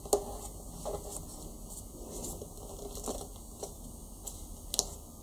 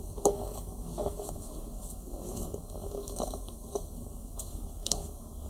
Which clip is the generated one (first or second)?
second